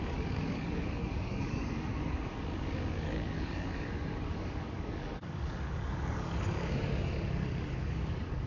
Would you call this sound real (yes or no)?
no